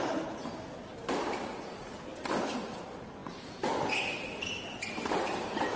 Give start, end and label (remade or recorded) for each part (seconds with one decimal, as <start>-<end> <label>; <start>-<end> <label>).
0.0-1.0 recorded; 1.0-2.1 remade; 2.1-5.8 recorded